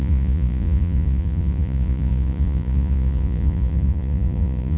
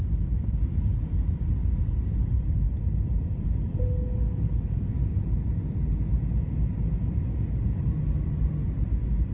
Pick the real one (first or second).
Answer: second